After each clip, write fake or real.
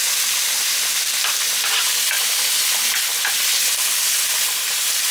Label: real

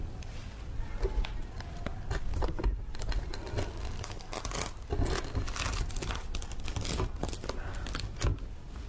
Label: real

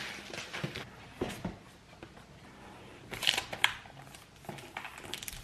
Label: real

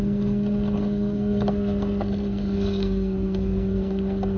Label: fake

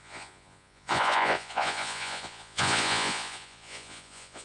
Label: fake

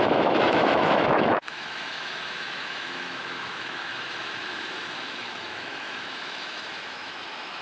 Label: fake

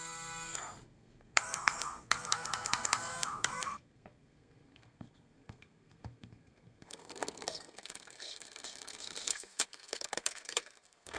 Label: fake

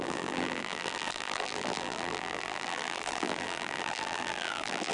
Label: fake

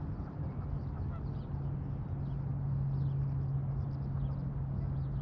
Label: real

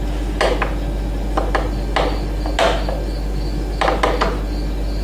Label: real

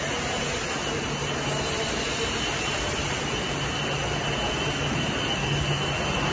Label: real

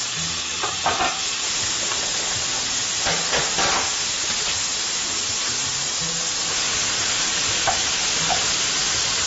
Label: real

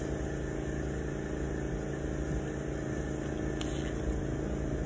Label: real